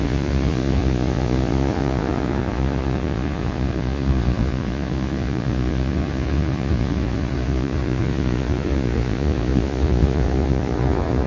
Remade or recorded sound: remade